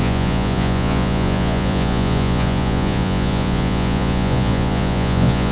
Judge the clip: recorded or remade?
remade